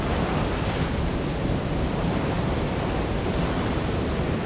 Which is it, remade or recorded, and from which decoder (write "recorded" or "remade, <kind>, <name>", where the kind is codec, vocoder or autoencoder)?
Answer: recorded